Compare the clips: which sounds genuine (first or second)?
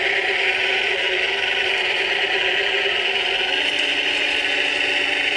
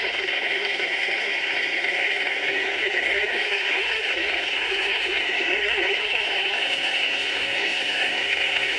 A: first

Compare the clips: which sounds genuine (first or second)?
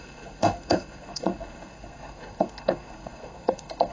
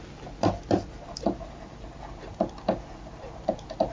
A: second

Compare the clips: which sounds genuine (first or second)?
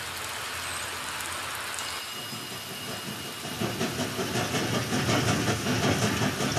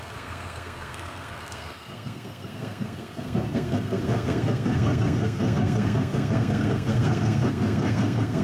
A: first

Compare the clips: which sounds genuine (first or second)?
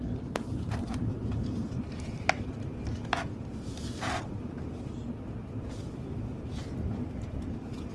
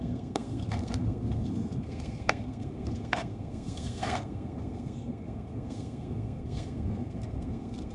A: first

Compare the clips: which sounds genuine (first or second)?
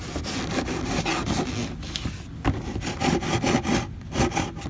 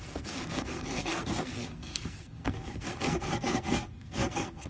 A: first